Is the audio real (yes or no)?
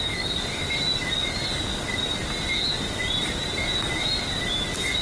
yes